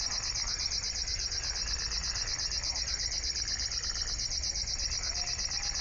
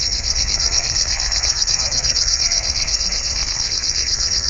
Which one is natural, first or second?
first